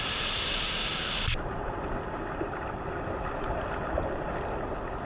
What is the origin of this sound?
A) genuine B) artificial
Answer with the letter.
B